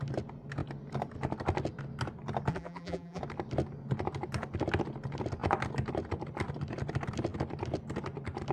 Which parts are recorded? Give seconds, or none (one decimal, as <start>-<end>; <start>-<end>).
0.0-2.5; 3.2-8.5